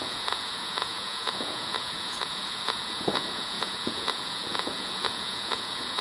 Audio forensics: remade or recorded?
remade